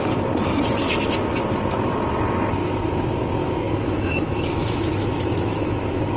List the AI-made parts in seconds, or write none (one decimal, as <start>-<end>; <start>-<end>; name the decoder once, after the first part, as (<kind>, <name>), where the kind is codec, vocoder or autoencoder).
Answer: 3.4-6.2 (autoencoder, DAC-VAE)